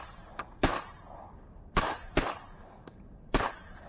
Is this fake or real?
fake